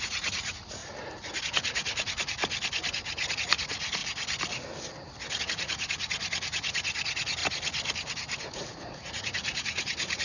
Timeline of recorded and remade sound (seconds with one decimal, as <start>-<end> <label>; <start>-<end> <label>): 0.0-0.8 remade; 0.8-1.4 recorded; 1.4-2.4 remade; 2.4-3.3 recorded; 3.3-4.0 remade; 4.0-5.4 recorded; 5.4-7.4 remade; 7.4-8.5 recorded; 8.5-10.2 remade